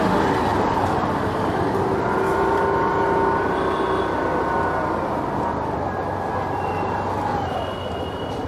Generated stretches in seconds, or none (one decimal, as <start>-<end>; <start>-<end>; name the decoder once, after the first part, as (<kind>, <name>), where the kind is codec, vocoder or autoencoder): none